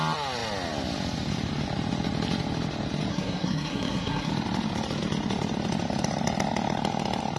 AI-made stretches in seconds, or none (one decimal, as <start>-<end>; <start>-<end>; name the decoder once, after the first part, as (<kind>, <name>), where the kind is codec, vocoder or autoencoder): 3.1-4.3 (codec, SNAC)